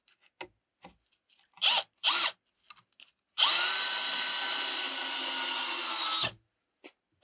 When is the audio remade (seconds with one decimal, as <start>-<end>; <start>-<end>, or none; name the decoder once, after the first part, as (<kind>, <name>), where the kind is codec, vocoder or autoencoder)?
none